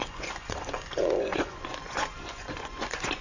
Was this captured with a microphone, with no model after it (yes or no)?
no